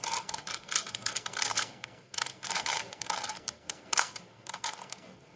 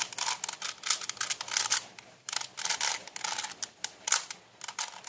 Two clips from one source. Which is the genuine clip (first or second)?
second